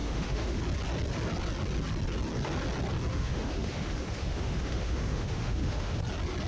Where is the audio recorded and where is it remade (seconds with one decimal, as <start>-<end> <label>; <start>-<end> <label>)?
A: 0.0-0.6 remade; 0.6-3.1 recorded; 3.1-6.0 remade; 6.0-6.5 recorded